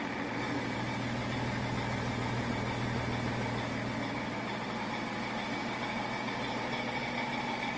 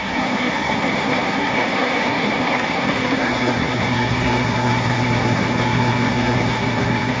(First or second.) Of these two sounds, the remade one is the second